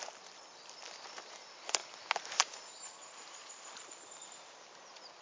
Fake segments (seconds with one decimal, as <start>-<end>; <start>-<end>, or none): none